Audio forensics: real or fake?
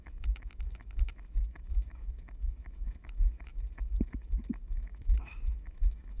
fake